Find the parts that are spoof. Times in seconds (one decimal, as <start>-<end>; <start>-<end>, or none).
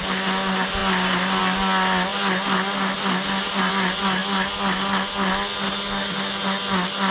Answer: none